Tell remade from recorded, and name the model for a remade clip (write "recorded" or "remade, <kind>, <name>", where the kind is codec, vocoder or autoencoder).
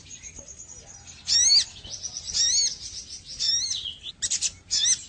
recorded